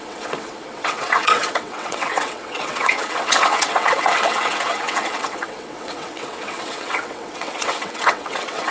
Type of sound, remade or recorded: remade